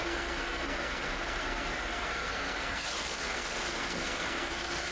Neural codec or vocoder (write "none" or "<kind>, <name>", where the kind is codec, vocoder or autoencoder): codec, SNAC